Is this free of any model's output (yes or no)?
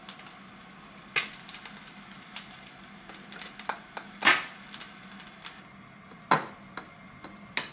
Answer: yes